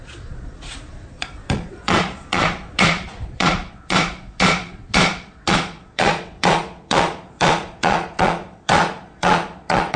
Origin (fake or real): fake